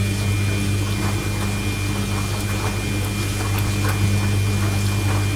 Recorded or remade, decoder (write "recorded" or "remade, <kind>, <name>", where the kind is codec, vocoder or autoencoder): recorded